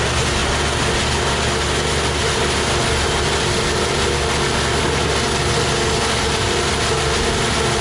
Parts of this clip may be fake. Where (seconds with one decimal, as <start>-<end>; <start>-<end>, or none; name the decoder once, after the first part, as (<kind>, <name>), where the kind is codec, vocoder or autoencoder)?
none